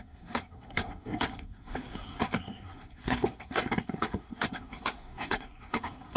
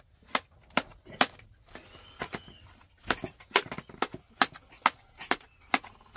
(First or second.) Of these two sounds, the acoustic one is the second